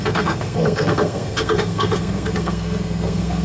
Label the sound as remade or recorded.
remade